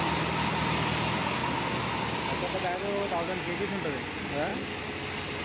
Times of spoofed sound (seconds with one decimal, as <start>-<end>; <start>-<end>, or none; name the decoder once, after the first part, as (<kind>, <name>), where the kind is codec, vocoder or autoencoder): none